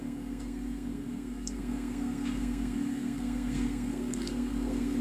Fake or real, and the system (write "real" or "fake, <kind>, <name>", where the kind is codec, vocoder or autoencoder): fake, codec, SNAC